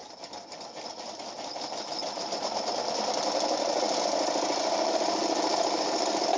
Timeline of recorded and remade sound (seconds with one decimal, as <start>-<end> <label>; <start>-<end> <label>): 0.0-6.4 recorded